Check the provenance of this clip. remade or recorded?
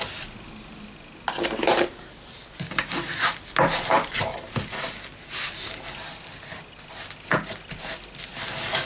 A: recorded